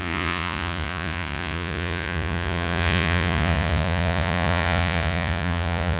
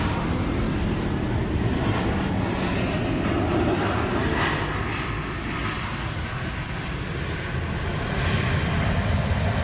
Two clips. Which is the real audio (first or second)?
second